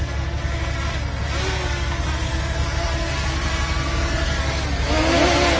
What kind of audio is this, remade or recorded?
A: recorded